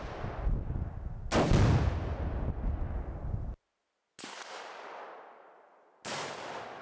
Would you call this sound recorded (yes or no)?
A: yes